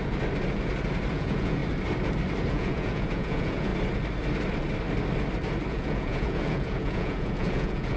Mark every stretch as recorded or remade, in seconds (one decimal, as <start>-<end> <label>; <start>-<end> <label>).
0.0-1.1 recorded; 1.1-1.6 remade; 1.6-2.5 recorded; 2.5-3.7 remade; 3.7-5.7 recorded; 5.7-8.0 remade